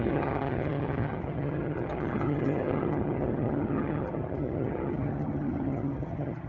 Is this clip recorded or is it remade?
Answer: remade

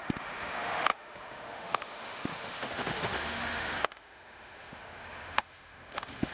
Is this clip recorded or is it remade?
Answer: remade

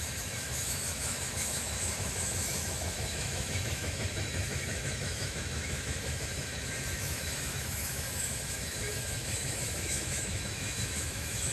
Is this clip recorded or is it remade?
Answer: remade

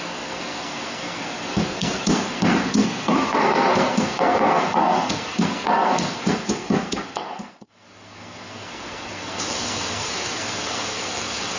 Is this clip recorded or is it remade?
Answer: remade